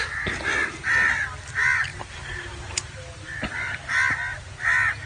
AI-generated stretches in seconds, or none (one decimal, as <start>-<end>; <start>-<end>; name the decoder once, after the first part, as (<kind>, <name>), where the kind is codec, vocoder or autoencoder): 1.9-3.5 (vocoder, BigVGAN v2)